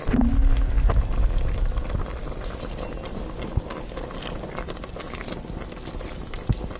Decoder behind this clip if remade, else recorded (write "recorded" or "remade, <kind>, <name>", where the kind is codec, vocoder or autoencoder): recorded